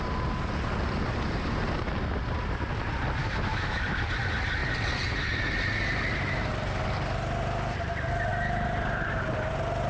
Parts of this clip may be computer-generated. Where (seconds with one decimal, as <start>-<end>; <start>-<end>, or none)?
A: 3.2-3.9